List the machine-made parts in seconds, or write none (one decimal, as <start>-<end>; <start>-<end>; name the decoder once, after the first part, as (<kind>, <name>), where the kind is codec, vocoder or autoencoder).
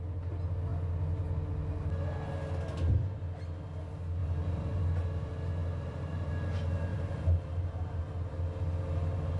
4.2-4.8 (vocoder, BigVGAN v2); 5.6-6.3; 6.9-8.0